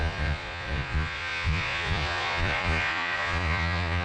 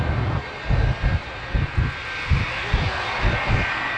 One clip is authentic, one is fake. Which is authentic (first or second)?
second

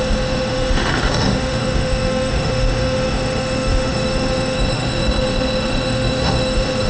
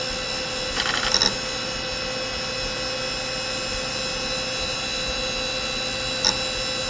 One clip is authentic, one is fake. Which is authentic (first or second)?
second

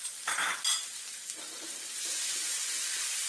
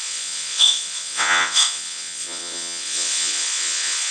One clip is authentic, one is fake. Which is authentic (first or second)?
first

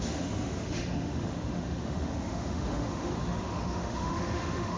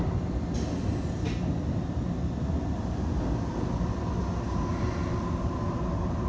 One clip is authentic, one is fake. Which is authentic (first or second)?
second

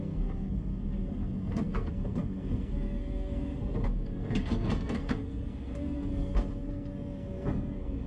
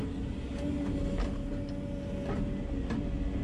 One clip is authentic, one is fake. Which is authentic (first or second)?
second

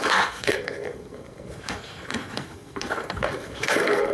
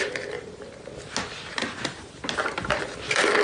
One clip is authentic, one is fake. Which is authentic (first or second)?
second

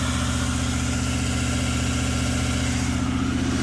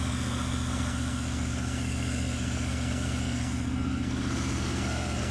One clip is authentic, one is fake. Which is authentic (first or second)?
first